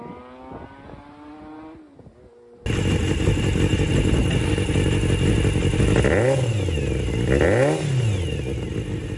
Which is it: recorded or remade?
recorded